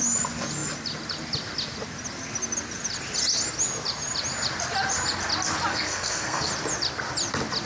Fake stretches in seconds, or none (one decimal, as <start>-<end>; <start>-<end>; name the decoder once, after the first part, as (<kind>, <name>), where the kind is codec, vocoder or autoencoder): 5.7-6.5 (codec, SNAC)